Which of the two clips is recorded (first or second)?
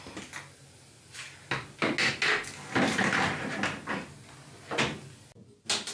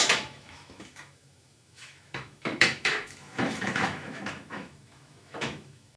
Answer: first